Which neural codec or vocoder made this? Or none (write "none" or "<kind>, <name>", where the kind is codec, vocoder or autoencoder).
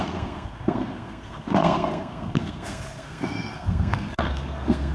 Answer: codec, SNAC